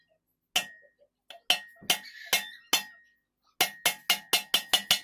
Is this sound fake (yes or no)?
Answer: no